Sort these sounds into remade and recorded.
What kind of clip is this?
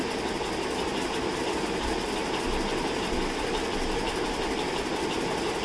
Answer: recorded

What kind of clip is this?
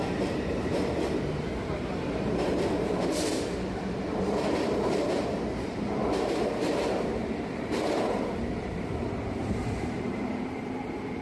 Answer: remade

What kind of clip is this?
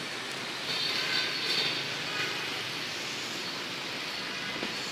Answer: recorded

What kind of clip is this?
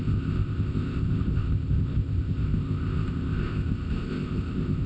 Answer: remade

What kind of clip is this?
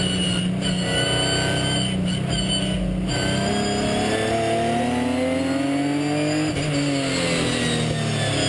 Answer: recorded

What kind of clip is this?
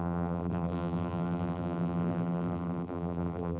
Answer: remade